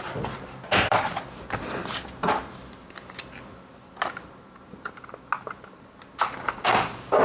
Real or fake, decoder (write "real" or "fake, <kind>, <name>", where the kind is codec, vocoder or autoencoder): real